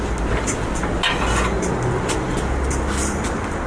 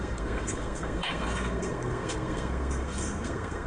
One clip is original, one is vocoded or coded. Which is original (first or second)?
first